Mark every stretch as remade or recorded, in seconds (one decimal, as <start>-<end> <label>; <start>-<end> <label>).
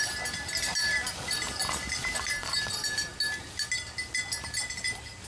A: 0.0-5.3 recorded